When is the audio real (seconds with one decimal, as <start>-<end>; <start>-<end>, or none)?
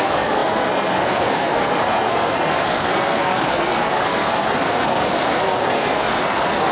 none